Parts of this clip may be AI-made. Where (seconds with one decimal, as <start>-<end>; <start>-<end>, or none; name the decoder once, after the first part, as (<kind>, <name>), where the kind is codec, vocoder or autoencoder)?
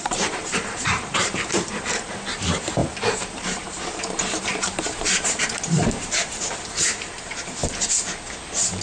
0.0-7.6 (vocoder, BigVGAN v2)